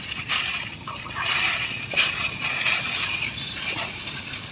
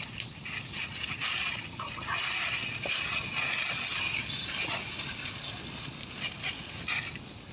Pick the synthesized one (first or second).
first